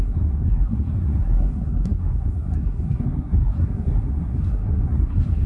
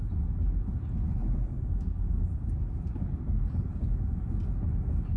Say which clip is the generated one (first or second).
first